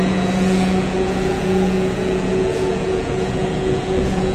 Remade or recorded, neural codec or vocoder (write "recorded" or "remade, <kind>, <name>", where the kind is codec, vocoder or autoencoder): remade, vocoder, Vocos